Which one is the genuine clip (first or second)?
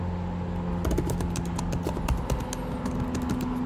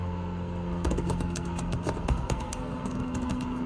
first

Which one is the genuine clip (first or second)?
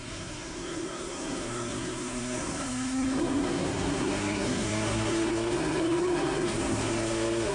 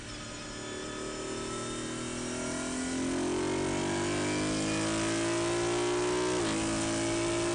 second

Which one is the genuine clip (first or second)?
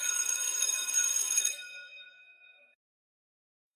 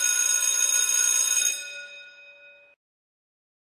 second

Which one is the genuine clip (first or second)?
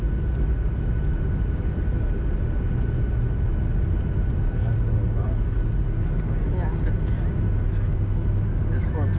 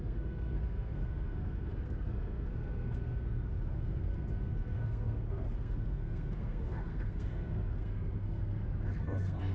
first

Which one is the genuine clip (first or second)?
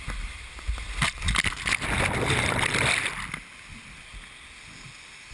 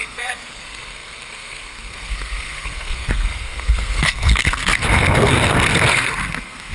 first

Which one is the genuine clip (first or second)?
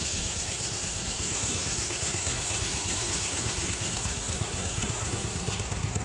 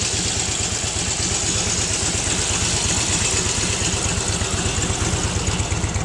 second